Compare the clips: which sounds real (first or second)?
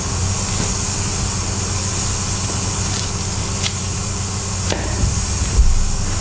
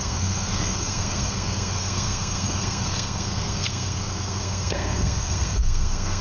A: first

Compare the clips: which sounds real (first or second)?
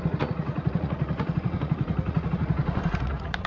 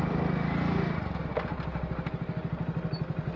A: second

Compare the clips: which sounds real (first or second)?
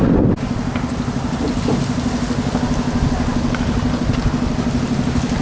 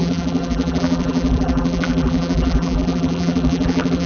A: first